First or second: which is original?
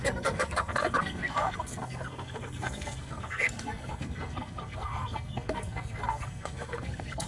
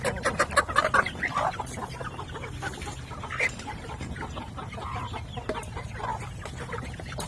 second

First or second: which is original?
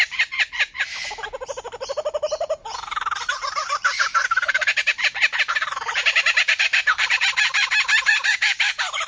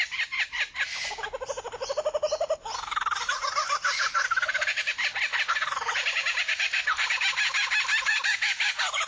second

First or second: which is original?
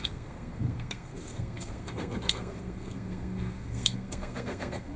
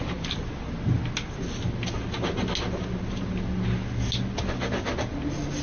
second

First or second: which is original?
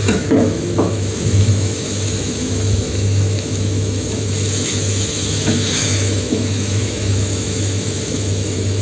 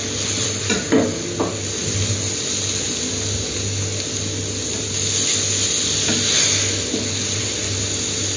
second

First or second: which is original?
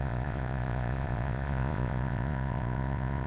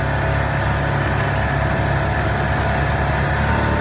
second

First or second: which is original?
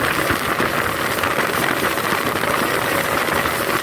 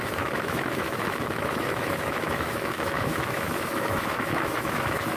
first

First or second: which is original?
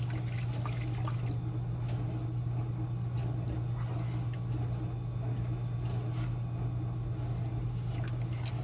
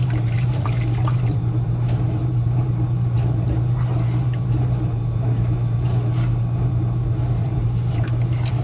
first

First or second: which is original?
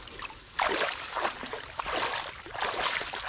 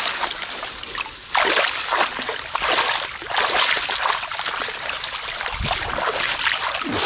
second